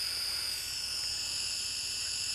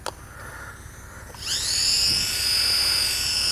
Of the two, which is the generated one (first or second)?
first